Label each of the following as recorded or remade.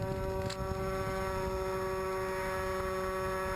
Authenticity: recorded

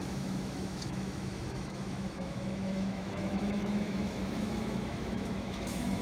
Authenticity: remade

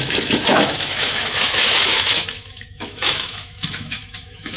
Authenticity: remade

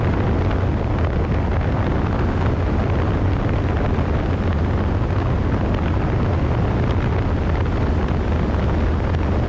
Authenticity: recorded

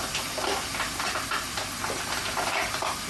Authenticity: recorded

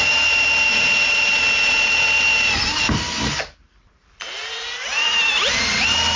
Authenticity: recorded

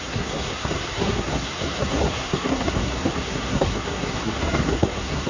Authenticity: remade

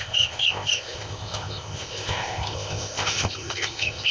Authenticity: remade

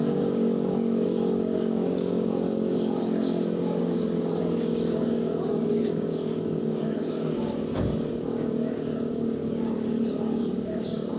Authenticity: remade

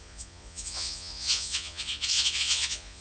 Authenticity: remade